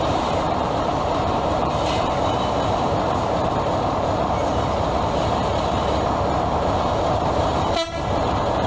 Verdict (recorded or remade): remade